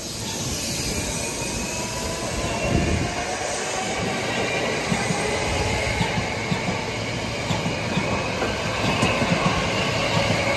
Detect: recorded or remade recorded